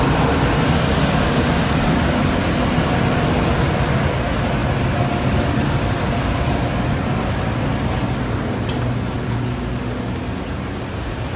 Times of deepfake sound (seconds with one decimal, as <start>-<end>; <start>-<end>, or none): none